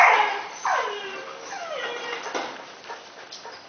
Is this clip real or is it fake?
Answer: fake